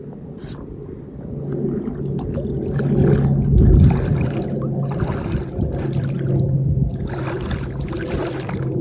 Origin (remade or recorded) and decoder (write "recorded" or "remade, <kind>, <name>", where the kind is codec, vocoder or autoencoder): recorded